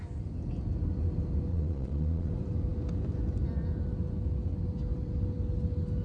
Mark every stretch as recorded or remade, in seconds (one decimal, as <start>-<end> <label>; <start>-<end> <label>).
0.0-1.5 recorded; 1.5-2.3 remade; 2.3-6.0 recorded